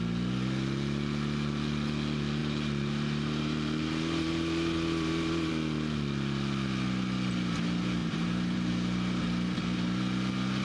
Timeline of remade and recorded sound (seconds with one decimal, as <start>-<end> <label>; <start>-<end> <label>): 0.0-2.4 recorded; 2.4-5.5 remade; 5.5-8.0 recorded; 8.0-8.7 remade; 8.7-10.6 recorded